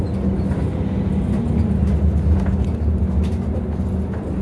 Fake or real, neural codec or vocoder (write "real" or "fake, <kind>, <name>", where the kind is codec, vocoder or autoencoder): real